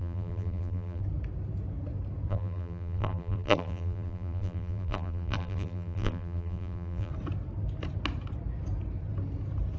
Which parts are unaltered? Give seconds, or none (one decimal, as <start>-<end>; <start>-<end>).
1.0-2.3; 7.1-9.8